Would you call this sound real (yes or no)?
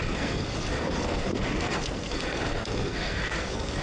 no